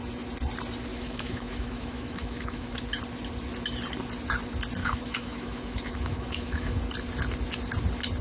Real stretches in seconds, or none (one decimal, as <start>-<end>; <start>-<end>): 0.0-0.9; 2.8-4.8; 6.8-8.2